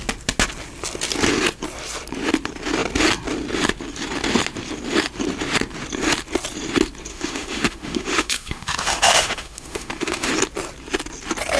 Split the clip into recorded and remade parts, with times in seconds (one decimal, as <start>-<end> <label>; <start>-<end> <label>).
0.0-7.1 recorded; 7.1-10.3 remade; 10.3-11.6 recorded